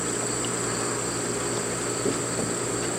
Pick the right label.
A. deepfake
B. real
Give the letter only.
B